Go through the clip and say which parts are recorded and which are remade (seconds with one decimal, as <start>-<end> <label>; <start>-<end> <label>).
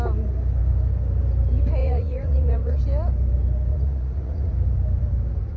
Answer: 0.0-1.8 recorded; 1.8-2.8 remade; 2.8-3.7 recorded; 3.7-4.5 remade; 4.5-5.6 recorded